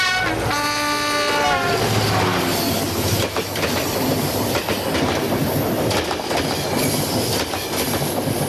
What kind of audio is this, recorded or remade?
recorded